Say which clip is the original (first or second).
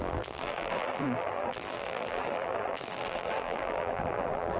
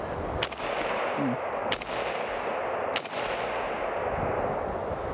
second